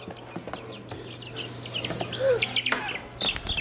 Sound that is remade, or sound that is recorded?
recorded